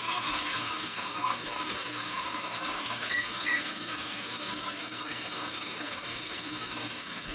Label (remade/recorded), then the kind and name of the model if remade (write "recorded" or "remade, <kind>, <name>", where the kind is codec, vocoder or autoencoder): remade, codec, SNAC